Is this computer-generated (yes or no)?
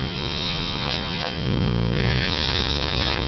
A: yes